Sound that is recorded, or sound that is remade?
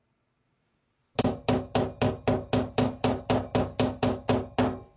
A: recorded